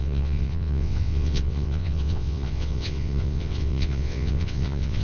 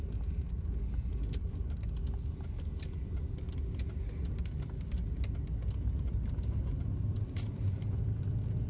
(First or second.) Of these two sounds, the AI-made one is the first